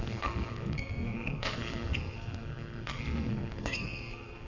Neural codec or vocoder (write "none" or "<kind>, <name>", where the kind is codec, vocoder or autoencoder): codec, SNAC